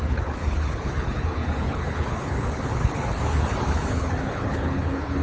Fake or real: fake